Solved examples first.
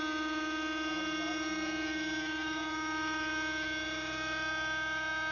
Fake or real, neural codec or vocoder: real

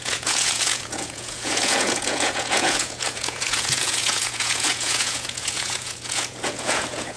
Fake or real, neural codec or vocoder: fake, vocoder, Vocos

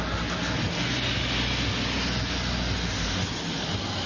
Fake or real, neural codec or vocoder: real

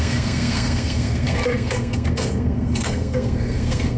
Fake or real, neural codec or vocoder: fake, codec, SNAC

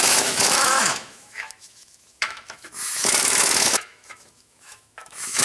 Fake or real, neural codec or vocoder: fake, autoencoder, DAC-VAE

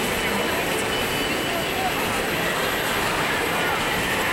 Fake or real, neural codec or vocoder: real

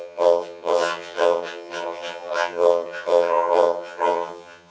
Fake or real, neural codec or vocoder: fake, vocoder, HiFi-GAN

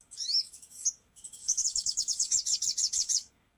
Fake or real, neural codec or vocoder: fake, codec, DAC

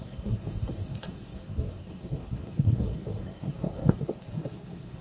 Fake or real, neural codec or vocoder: fake, codec, SNAC